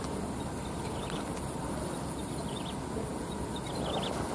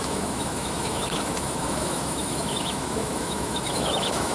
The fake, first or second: second